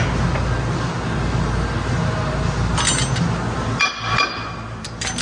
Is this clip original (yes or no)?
yes